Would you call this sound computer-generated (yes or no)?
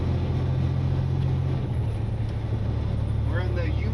no